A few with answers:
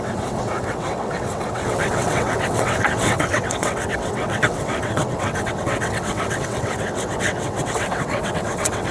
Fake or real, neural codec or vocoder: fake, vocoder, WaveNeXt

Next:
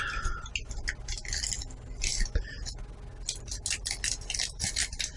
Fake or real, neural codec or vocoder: real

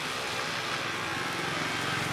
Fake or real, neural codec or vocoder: real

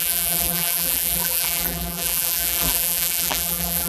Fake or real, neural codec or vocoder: fake, vocoder, BigVGAN v2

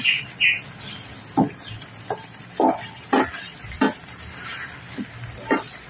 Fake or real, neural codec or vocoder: fake, vocoder, BigVGAN v2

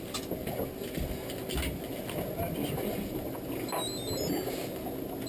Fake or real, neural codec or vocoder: real